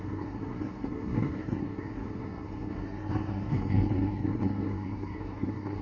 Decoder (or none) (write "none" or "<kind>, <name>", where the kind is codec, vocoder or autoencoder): codec, SNAC